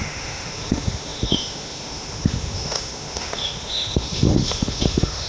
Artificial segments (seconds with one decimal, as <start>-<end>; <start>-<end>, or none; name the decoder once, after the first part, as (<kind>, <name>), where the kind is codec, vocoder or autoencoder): 0.0-5.3 (autoencoder, DAC-VAE)